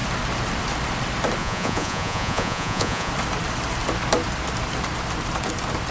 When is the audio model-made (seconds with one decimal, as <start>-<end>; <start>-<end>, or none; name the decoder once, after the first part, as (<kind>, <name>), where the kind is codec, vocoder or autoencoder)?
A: 1.4-3.1 (vocoder, Vocos)